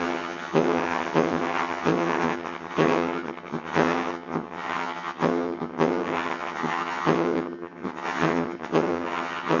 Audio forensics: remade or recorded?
remade